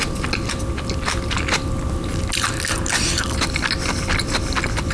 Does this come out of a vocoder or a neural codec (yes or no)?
no